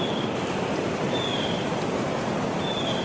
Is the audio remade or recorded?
recorded